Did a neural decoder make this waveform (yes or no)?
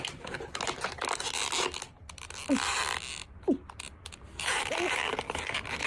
no